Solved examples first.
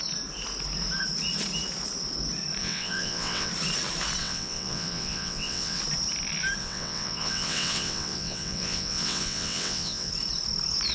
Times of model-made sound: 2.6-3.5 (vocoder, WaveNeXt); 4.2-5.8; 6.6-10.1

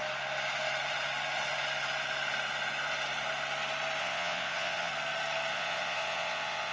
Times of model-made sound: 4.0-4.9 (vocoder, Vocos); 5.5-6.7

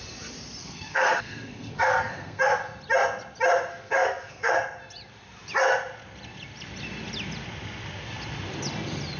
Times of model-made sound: 0.6-2.4 (codec, SNAC); 3.7-4.5